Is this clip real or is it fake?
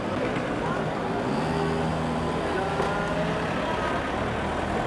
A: real